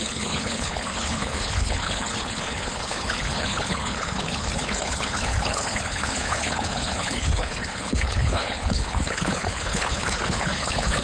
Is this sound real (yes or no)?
no